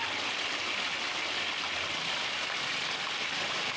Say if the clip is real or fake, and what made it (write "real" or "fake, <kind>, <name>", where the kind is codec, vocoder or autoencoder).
real